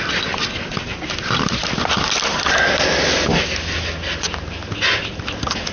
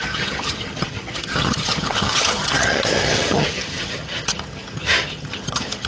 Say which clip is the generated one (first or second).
second